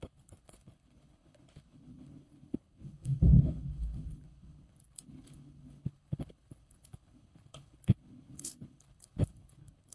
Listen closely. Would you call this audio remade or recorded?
remade